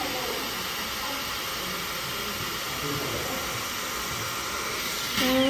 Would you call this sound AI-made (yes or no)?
no